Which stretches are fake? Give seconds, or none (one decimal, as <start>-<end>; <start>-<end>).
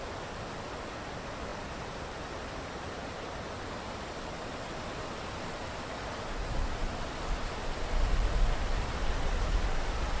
none